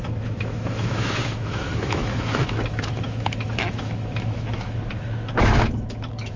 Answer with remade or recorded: remade